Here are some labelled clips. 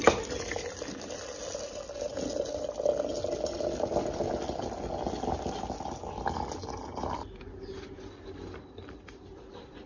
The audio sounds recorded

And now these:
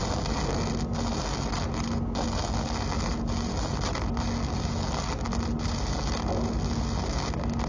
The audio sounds recorded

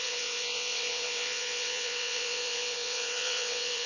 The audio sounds remade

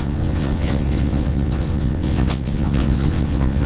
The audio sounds remade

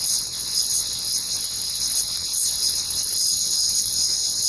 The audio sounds remade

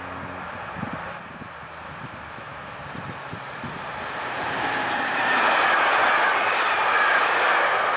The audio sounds recorded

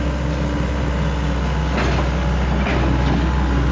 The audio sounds recorded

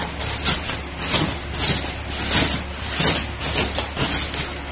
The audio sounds recorded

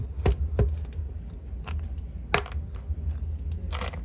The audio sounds recorded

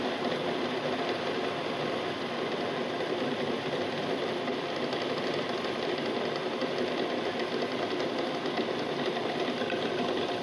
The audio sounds recorded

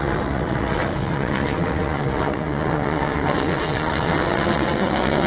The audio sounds remade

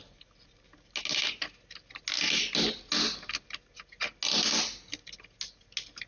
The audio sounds recorded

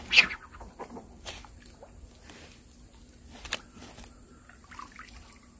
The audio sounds recorded